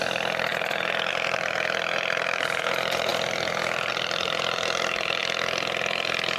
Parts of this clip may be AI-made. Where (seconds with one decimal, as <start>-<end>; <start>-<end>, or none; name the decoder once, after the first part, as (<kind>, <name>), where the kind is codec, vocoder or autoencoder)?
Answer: 0.0-5.2 (vocoder, BigVGAN v2)

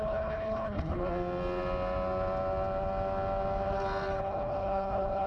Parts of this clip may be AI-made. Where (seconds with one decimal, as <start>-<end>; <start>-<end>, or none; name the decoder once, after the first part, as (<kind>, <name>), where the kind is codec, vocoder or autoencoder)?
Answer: 0.0-1.0 (codec, HILCodec); 4.2-5.3

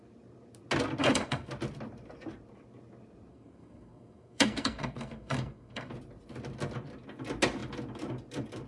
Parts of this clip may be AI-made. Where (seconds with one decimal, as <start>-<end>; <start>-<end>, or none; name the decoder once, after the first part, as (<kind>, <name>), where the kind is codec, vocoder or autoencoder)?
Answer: 1.0-1.5 (codec, SNAC); 3.3-5.9

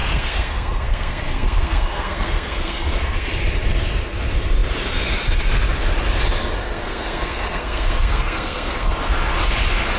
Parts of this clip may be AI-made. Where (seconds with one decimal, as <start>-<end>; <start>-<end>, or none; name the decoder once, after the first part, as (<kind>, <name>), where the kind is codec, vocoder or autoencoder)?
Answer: 0.0-3.3 (codec, SNAC); 6.6-8.9

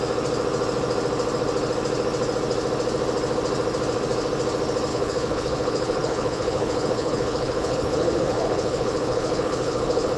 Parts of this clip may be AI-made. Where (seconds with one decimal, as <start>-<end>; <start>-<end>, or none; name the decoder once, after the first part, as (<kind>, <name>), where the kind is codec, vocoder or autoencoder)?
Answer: 4.9-10.2 (codec, HILCodec)